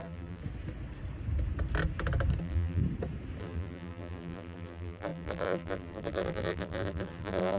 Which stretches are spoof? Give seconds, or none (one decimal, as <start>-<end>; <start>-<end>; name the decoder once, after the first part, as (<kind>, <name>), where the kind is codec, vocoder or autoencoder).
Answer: 0.0-0.4 (vocoder, BigVGAN v2); 2.4-2.8; 3.4-7.6